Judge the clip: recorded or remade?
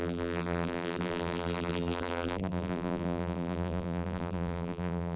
remade